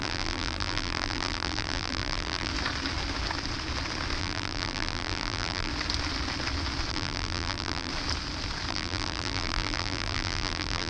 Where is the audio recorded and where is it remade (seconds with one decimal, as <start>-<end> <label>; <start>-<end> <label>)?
0.0-2.5 remade; 2.5-4.2 recorded; 4.2-5.7 remade; 5.7-6.9 recorded; 6.9-7.9 remade; 7.9-8.7 recorded; 8.7-10.9 remade